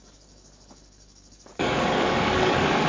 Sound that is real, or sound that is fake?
fake